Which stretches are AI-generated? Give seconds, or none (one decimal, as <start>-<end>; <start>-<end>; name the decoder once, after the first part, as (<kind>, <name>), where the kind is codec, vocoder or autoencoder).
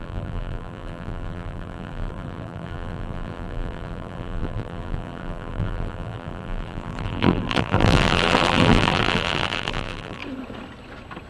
0.0-10.2 (vocoder, BigVGAN v2)